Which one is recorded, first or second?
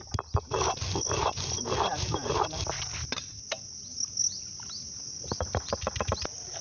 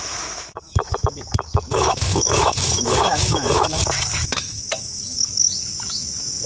first